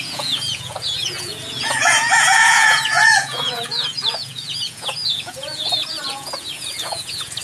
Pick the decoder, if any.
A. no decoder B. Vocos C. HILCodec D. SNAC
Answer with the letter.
B